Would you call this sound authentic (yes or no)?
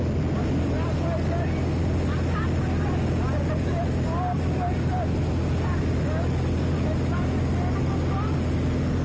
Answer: yes